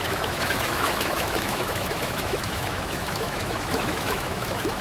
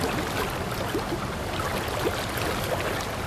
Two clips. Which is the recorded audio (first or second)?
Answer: second